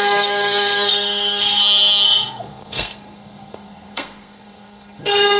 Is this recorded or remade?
remade